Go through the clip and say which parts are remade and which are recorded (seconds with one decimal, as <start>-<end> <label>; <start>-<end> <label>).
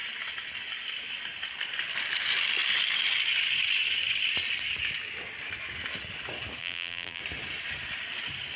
0.0-6.6 recorded; 6.6-7.2 remade; 7.2-8.6 recorded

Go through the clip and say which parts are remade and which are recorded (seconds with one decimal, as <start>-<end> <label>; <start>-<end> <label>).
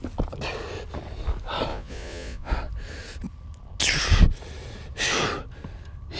0.0-1.7 recorded; 1.7-2.5 remade; 2.5-6.2 recorded